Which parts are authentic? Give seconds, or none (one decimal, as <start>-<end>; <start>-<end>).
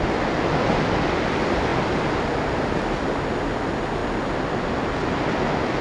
0.0-5.8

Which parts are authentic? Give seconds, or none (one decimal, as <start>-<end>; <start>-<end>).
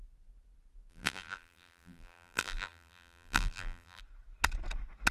0.0-0.9; 4.0-5.1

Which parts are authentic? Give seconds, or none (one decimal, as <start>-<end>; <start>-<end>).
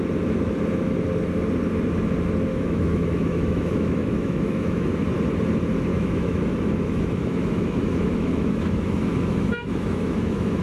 0.0-2.5; 4.9-5.9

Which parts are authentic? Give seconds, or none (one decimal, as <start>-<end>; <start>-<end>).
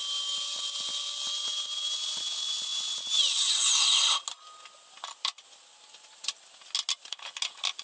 0.0-7.8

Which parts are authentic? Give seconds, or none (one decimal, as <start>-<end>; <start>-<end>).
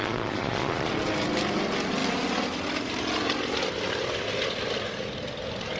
0.9-5.8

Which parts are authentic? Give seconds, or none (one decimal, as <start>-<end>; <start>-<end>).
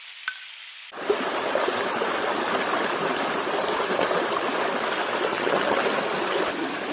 0.0-5.3; 5.8-6.9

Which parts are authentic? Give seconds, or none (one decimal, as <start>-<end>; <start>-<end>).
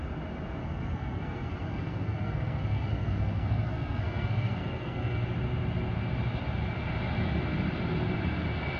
0.0-0.6; 5.2-8.8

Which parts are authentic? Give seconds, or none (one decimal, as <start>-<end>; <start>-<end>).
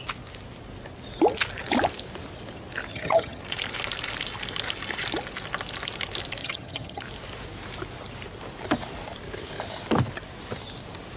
0.0-2.9; 3.4-6.4; 7.0-11.2